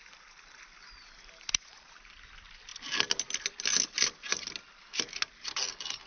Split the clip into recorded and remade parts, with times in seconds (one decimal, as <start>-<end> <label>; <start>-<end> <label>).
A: 0.0-6.1 recorded